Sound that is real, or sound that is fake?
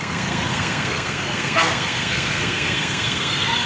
fake